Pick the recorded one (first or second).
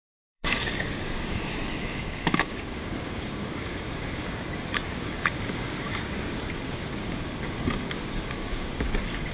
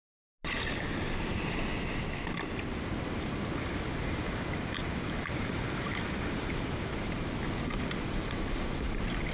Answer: second